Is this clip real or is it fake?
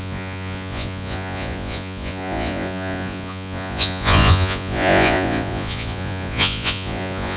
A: fake